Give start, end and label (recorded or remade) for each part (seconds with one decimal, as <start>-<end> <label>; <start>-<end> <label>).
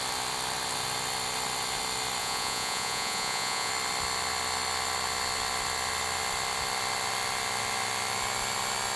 0.0-2.2 recorded; 2.2-3.7 remade; 3.7-9.0 recorded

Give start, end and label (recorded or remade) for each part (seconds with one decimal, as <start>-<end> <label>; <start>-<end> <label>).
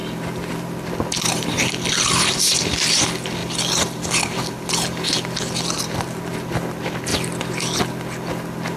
0.0-2.9 remade; 2.9-3.4 recorded; 3.4-6.2 remade; 6.2-8.8 recorded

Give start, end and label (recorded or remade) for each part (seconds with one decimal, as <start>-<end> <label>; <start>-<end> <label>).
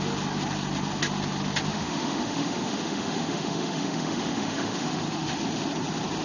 0.0-1.7 recorded; 1.7-5.4 remade; 5.4-6.2 recorded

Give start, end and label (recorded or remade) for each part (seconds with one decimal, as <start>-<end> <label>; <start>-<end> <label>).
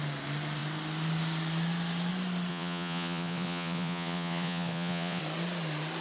0.0-2.5 recorded; 2.5-5.2 remade; 5.2-6.0 recorded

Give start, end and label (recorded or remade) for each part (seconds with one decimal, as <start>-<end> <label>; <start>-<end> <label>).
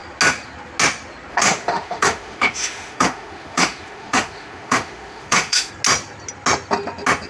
0.0-1.3 recorded; 1.3-5.7 remade; 5.7-7.3 recorded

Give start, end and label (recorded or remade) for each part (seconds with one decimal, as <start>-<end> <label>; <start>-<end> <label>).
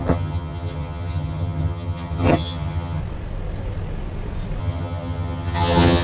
0.0-3.0 remade; 3.0-4.6 recorded; 4.6-6.0 remade